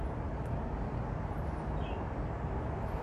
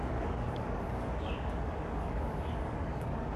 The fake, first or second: second